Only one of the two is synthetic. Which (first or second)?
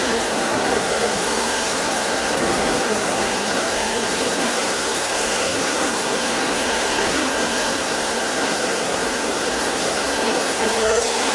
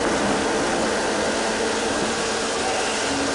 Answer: first